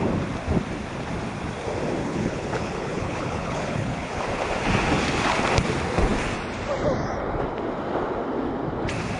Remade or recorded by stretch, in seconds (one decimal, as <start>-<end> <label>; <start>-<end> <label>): 0.0-2.0 recorded; 2.0-4.2 remade; 4.2-9.2 recorded